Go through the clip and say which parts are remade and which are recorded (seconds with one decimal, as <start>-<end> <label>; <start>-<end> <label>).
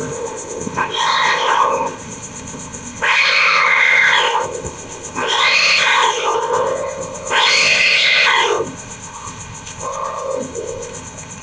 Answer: 0.0-11.4 remade